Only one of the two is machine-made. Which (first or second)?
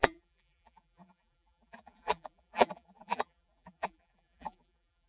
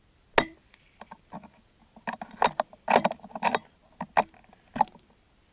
first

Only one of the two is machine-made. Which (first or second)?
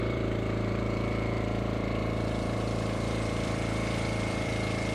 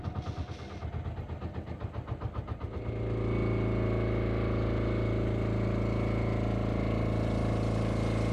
first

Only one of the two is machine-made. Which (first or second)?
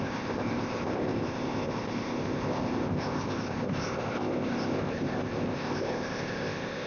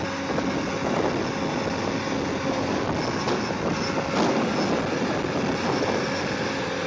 first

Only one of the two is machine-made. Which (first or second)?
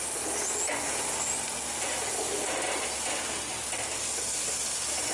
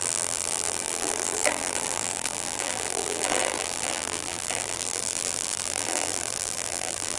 second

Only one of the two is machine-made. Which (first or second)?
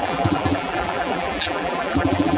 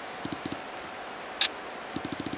first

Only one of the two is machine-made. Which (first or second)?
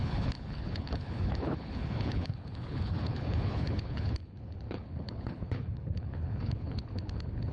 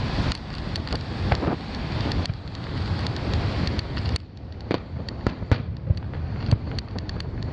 first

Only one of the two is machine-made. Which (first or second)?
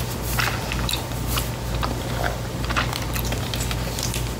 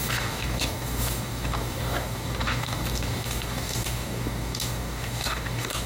second